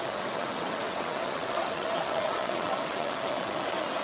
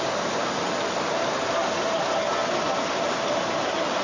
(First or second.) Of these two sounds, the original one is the second